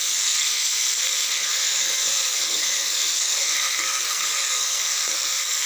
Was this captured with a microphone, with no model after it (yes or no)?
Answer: no